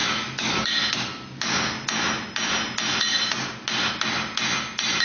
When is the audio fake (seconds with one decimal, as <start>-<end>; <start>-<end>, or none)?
0.0-0.9